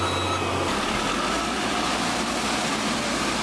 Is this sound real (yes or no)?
yes